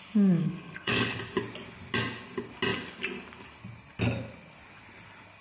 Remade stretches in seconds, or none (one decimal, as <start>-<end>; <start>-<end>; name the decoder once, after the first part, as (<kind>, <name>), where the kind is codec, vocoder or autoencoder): 0.4-1.2 (codec, HILCodec)